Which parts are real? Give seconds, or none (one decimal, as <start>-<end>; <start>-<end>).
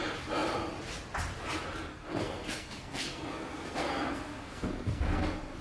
0.0-1.9